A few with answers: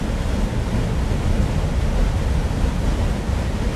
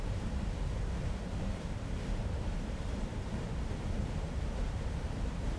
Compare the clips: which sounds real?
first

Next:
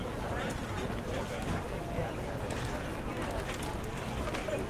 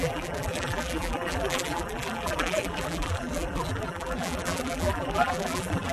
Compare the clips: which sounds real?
first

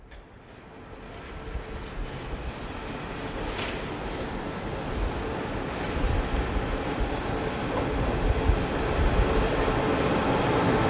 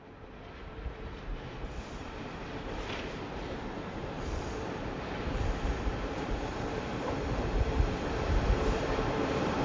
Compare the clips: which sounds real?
first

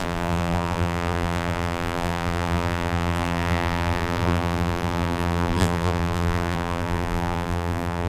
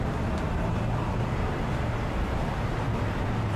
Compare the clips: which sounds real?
second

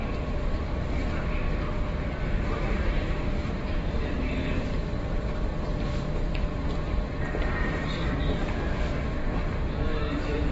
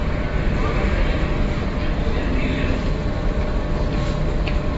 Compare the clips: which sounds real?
second